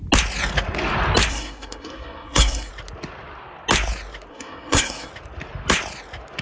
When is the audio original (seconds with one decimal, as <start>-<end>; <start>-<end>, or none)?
0.0-1.3; 2.7-4.3; 5.1-6.4